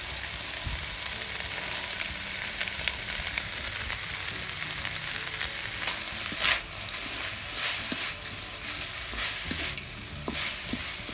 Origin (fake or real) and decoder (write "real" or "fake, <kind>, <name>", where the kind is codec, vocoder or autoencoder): real